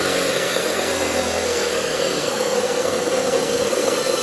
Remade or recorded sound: remade